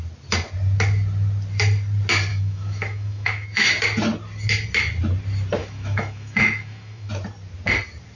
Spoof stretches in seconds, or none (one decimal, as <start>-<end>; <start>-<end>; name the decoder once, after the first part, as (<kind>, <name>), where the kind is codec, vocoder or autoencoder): 2.3-3.7 (autoencoder, DAC-VAE); 5.6-7.1